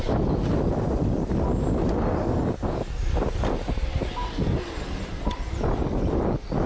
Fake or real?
real